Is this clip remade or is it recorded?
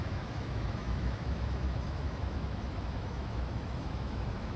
remade